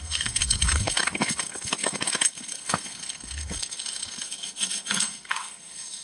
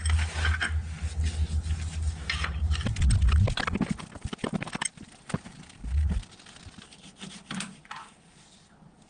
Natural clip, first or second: second